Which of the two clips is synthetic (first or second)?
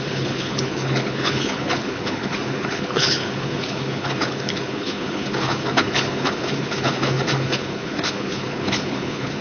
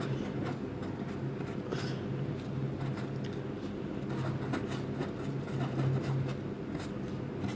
first